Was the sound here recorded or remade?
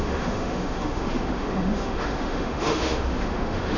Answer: remade